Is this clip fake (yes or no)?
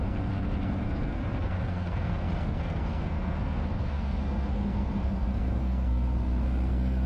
yes